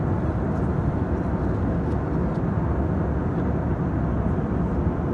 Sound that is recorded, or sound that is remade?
recorded